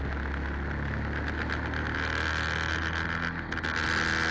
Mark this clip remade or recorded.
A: recorded